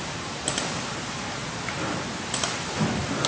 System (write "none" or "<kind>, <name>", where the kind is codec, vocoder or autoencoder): none